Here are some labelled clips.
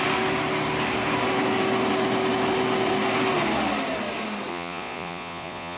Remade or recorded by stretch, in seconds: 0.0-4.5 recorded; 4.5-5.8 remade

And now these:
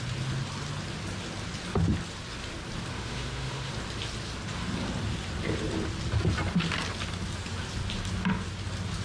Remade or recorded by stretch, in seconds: 0.0-2.9 recorded; 2.9-3.7 remade; 3.7-9.0 recorded

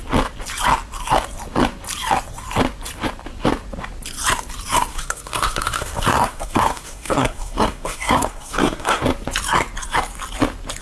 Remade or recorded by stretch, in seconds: 0.0-4.9 recorded; 4.9-9.0 remade; 9.0-10.8 recorded